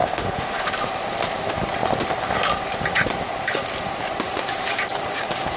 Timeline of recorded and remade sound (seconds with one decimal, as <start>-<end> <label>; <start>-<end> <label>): 0.0-0.6 remade; 0.6-5.6 recorded